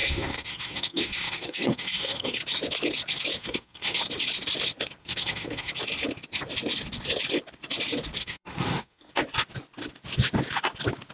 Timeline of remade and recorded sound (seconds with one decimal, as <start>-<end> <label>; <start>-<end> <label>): 0.0-2.4 remade; 2.4-3.4 recorded; 3.4-4.0 remade; 4.0-5.0 recorded; 5.0-5.7 remade; 5.7-8.2 recorded; 8.2-9.1 remade; 9.1-11.1 recorded